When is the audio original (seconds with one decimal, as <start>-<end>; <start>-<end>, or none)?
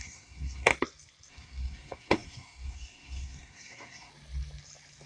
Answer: 0.7-1.3; 4.1-5.1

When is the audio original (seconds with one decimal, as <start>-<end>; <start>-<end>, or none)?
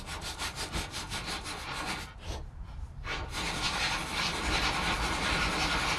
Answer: 0.0-6.0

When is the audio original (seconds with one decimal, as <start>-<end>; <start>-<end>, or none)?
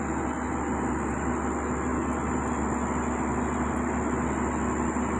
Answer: 0.0-5.2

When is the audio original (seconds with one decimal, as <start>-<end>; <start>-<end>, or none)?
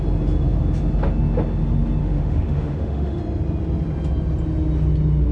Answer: 0.0-2.0; 3.2-5.3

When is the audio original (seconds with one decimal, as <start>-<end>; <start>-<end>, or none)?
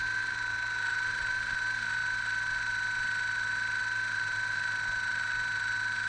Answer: 0.0-6.1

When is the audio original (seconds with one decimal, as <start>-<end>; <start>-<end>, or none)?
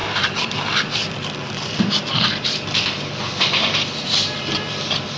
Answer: none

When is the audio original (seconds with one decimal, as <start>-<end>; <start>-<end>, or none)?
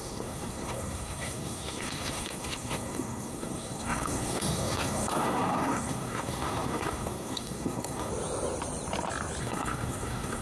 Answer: 8.1-9.4